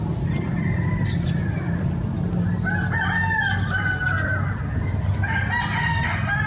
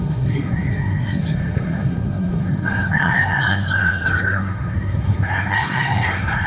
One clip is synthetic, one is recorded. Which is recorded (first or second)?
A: first